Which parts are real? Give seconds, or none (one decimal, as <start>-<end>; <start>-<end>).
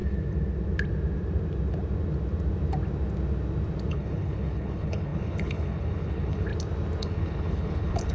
0.0-3.9; 6.5-7.0